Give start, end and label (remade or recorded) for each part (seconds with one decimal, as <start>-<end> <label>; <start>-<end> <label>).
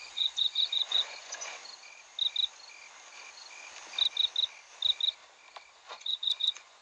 0.0-1.6 remade; 1.6-5.7 recorded; 5.7-6.8 remade